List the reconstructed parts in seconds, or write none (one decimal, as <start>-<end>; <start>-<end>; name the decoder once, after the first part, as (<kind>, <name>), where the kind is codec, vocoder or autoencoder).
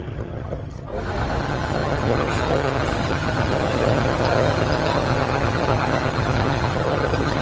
0.0-0.9 (vocoder, HiFi-GAN); 1.4-7.4